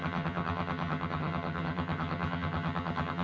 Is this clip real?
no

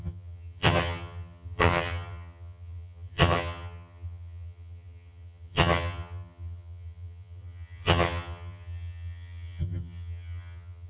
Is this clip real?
no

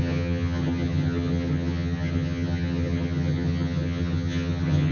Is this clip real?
no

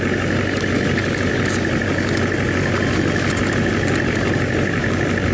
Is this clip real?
yes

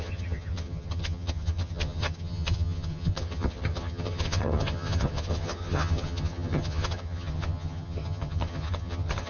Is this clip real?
no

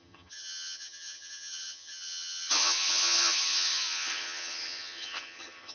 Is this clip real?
no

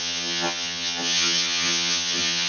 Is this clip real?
no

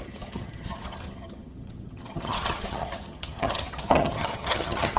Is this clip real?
no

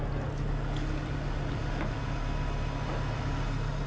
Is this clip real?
yes